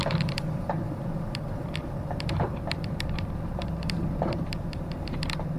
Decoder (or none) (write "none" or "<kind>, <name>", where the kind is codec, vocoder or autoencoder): vocoder, BigVGAN v2